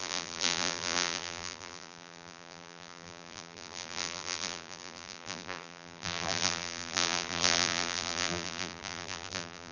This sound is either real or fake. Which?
fake